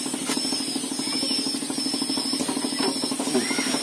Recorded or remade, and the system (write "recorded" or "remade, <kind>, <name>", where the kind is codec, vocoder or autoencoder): recorded